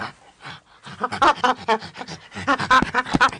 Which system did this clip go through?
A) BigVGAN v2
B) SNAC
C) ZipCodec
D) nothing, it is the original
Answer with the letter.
D